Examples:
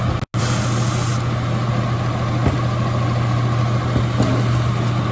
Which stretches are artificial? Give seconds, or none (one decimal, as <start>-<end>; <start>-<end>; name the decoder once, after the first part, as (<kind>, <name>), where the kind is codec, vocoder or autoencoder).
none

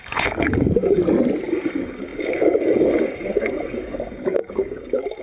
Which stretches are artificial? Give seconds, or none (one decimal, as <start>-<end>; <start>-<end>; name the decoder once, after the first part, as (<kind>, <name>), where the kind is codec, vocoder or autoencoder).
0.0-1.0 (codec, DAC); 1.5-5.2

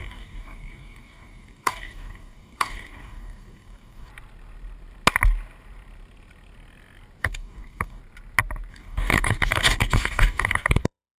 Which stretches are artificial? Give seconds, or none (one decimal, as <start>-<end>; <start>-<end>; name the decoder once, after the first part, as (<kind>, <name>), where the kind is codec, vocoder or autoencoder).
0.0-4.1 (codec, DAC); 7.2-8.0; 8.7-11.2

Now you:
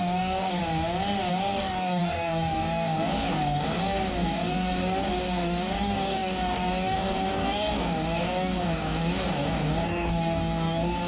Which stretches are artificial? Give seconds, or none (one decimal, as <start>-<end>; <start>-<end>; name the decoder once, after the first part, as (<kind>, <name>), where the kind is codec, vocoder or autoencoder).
0.0-0.6 (codec, DAC); 1.3-11.1